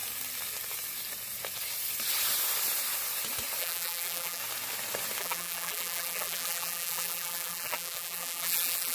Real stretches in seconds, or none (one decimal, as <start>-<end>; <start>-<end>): 0.0-3.6; 4.4-5.2